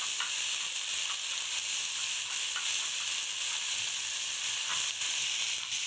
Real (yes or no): yes